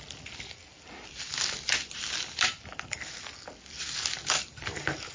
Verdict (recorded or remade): recorded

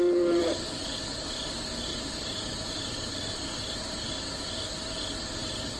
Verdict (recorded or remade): recorded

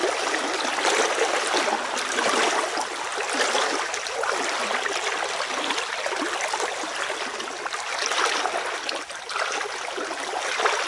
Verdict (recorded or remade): recorded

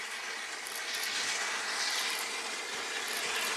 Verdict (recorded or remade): recorded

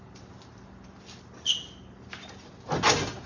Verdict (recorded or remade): recorded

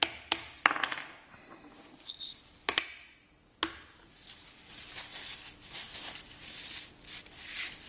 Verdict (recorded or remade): recorded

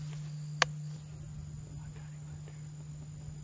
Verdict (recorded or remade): recorded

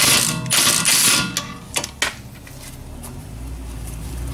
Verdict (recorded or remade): recorded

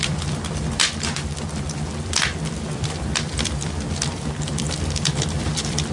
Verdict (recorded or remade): remade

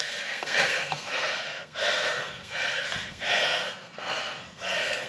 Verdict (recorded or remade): remade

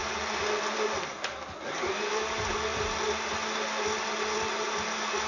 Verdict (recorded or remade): recorded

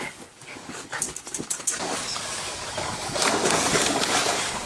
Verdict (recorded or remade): remade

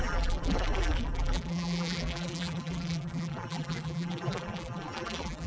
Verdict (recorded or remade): remade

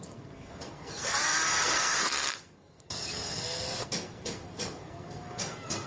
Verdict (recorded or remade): remade